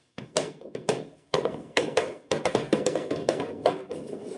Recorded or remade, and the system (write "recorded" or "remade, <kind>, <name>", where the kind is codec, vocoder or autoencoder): remade, codec, SNAC